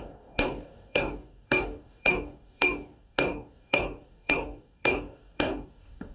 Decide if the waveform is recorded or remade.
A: remade